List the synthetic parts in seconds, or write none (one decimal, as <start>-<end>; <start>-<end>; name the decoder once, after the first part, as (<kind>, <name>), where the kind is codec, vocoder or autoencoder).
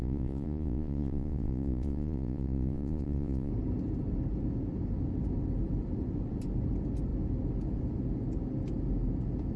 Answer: 0.0-3.5 (vocoder, Vocos)